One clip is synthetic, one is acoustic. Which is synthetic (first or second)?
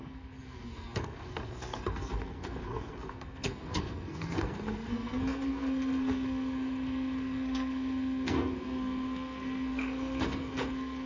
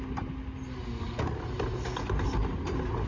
first